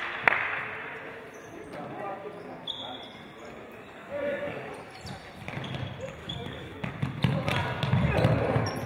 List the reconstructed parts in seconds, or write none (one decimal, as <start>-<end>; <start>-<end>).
4.0-4.7; 6.2-6.9